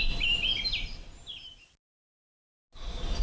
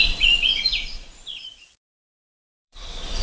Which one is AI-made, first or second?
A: second